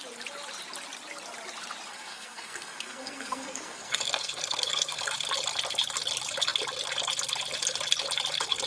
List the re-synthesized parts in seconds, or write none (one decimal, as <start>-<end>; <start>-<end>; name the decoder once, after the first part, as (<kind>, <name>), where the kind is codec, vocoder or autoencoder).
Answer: 1.9-5.1 (codec, SNAC)